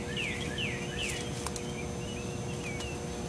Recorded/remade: recorded